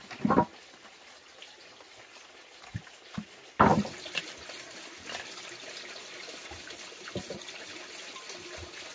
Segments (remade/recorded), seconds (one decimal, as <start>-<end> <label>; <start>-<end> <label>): 0.0-8.9 recorded